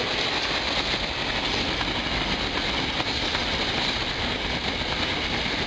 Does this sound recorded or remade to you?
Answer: recorded